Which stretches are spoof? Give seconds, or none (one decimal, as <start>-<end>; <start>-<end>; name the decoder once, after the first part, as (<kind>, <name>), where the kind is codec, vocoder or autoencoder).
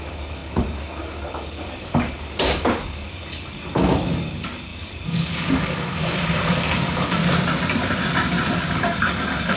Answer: 0.0-7.2 (codec, DAC); 8.7-9.6